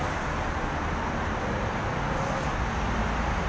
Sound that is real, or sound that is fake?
real